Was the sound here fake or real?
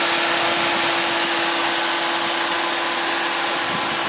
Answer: real